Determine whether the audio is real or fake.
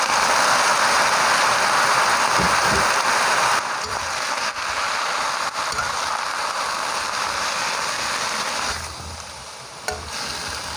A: real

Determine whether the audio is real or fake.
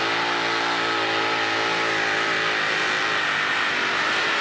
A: real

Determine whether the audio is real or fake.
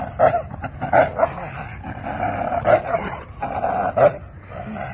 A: real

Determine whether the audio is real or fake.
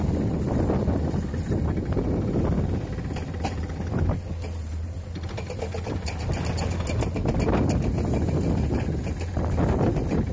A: real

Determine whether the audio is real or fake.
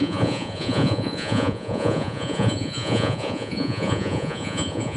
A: fake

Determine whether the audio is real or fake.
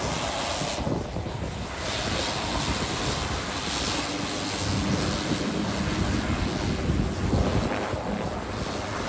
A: real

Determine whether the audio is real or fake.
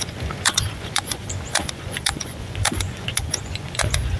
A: fake